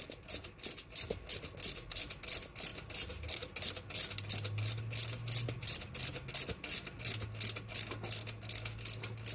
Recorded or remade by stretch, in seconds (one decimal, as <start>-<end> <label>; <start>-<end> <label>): 0.0-9.3 recorded